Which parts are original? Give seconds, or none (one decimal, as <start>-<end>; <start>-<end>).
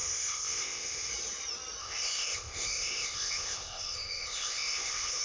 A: 1.1-1.8